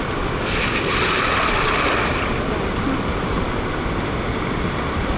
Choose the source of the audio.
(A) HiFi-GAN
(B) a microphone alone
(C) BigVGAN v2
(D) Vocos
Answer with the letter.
B